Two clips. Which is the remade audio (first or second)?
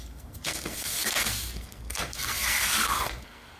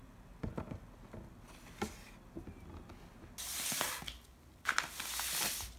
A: first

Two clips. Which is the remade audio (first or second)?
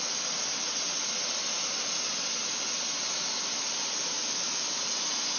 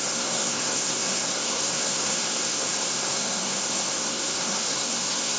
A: second